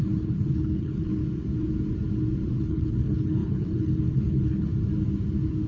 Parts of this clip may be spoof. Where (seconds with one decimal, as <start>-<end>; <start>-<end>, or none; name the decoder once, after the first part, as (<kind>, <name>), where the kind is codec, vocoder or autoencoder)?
0.0-1.2 (codec, HILCodec); 2.6-4.7